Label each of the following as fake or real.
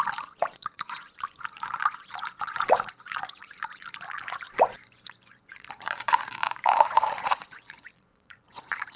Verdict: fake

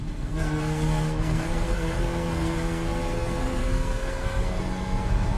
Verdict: fake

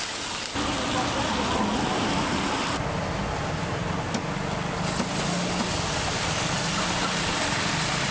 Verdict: real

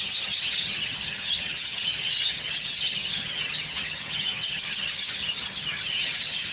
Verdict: fake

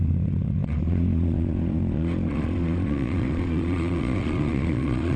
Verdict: fake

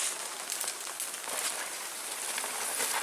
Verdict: fake